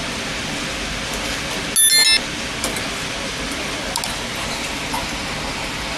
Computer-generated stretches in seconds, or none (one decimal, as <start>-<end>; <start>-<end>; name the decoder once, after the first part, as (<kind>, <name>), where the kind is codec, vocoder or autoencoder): none